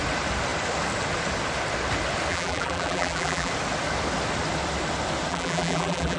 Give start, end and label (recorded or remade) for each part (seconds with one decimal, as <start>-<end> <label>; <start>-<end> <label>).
0.0-2.3 recorded; 2.3-3.5 remade; 3.5-5.3 recorded; 5.3-6.2 remade